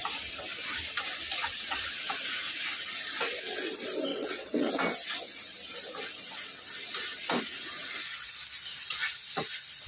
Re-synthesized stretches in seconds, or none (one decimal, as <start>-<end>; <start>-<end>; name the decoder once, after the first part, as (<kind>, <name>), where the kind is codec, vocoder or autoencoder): 1.4-2.2 (vocoder, WaveNeXt); 4.1-4.7; 7.8-8.3